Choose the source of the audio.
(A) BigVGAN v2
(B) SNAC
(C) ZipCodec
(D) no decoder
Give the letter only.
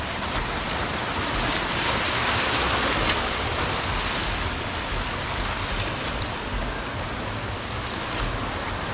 D